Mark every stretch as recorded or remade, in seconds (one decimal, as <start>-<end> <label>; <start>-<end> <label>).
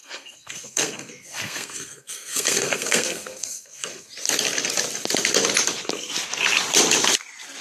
0.0-4.1 remade; 4.1-7.6 recorded